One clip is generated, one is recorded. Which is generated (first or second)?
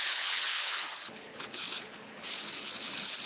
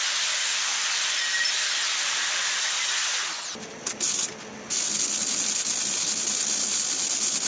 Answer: first